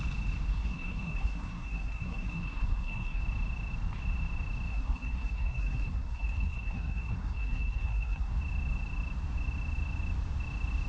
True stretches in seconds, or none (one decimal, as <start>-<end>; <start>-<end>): 0.0-0.5; 3.2-4.7; 8.3-10.9